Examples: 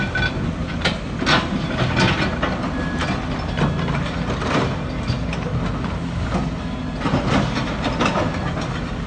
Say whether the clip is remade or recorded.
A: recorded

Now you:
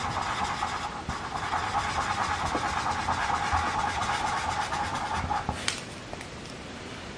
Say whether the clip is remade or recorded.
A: recorded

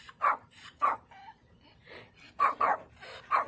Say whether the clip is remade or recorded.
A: recorded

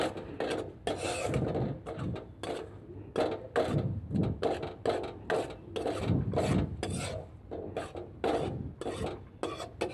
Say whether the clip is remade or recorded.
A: recorded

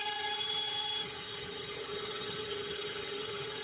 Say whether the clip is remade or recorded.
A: remade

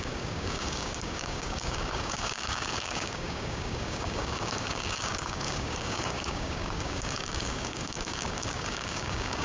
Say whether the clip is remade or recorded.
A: remade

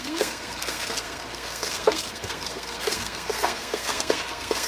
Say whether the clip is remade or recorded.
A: remade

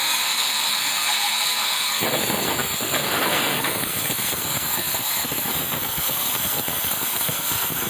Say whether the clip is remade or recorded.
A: remade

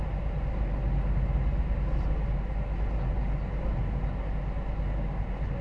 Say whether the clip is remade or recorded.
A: recorded